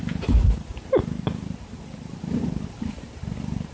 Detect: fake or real real